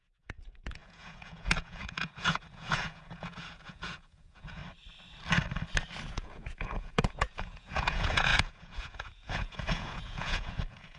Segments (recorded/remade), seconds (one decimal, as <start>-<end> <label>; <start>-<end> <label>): 0.0-4.6 remade; 4.6-6.1 recorded; 6.1-11.0 remade

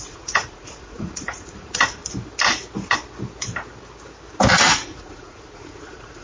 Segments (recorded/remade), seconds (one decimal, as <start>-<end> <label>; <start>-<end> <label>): 0.0-2.0 remade; 2.0-4.5 recorded; 4.5-6.2 remade

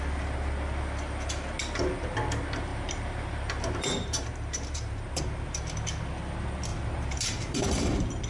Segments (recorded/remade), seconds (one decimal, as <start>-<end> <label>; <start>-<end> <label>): 0.0-2.7 recorded; 2.7-5.2 remade; 5.2-6.7 recorded; 6.7-8.3 remade

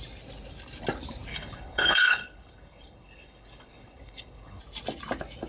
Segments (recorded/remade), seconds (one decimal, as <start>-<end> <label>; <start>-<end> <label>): 0.0-1.3 recorded; 1.3-4.6 remade; 4.6-5.5 recorded